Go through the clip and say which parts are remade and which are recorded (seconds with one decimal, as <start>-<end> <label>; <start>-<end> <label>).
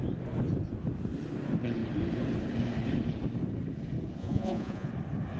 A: 0.0-4.2 recorded; 4.2-4.9 remade; 4.9-5.4 recorded